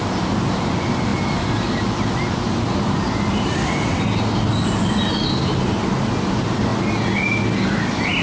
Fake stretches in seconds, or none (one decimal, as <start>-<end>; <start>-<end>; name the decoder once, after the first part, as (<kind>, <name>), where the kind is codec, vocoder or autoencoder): none